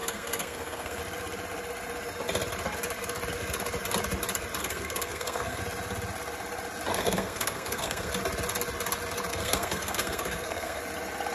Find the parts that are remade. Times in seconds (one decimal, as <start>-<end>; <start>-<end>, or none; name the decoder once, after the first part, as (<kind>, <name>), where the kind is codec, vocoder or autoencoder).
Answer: 0.0-1.0 (codec, SNAC); 4.6-5.6; 6.9-8.1; 9.3-10.8